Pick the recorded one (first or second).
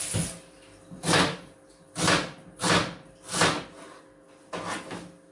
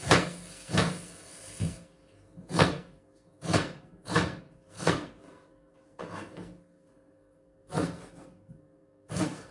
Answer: first